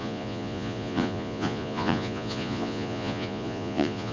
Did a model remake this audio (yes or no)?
yes